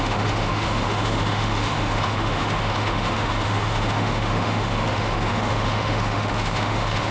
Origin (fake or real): fake